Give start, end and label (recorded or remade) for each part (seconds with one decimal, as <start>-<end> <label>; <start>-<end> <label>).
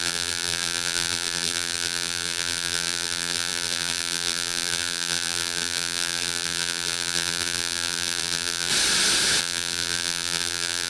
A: 0.0-8.7 remade; 8.7-9.4 recorded; 9.4-10.9 remade